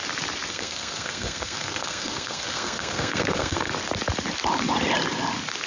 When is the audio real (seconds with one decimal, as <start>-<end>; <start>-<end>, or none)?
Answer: 0.0-0.5; 3.7-5.7